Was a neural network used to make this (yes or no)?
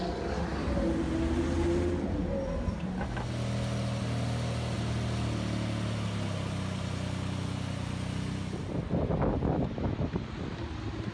no